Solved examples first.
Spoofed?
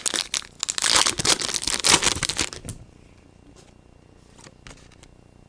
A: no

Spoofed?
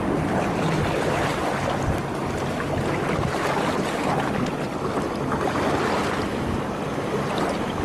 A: no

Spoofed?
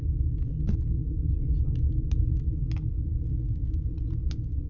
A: no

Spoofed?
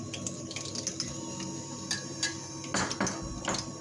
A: no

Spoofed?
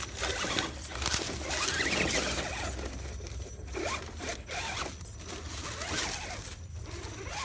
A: no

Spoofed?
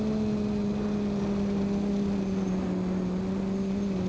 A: no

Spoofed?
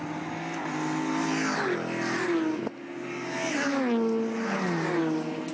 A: no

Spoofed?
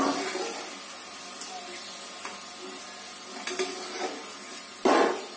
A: no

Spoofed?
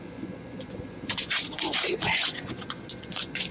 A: yes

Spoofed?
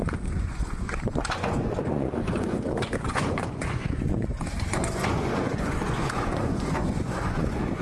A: yes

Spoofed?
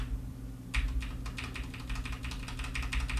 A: no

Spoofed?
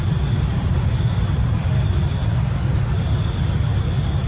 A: no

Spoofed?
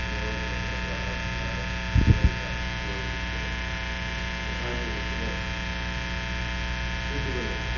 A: no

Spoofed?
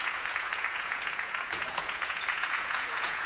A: yes